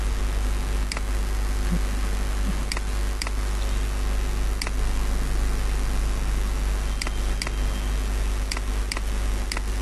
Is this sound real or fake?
real